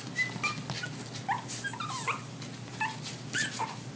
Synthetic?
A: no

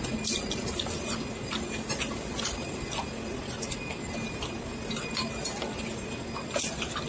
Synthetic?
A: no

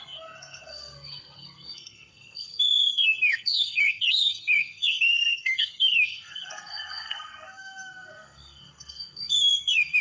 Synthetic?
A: yes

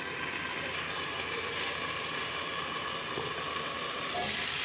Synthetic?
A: no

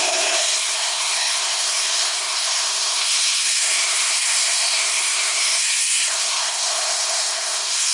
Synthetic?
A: yes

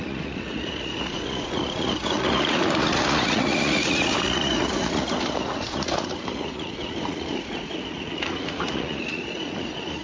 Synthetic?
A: yes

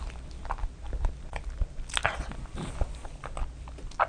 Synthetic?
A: no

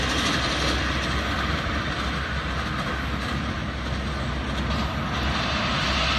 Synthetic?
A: no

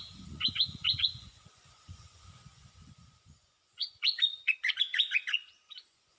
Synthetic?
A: yes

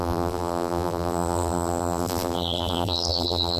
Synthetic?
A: yes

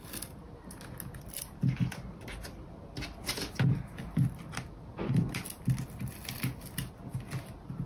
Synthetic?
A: no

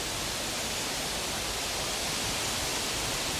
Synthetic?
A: no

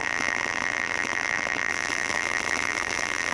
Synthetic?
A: yes